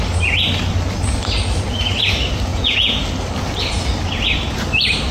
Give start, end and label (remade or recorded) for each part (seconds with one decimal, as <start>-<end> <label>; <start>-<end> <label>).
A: 0.0-2.5 recorded; 2.5-3.0 remade; 3.0-5.1 recorded